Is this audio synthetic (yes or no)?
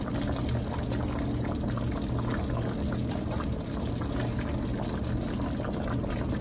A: no